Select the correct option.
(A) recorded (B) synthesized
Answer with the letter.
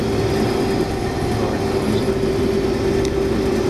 A